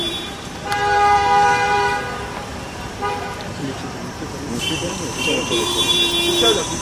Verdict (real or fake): fake